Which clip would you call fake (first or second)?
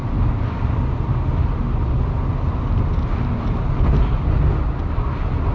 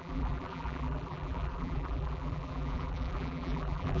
second